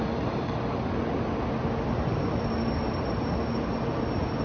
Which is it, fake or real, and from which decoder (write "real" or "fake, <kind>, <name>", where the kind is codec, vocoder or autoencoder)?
real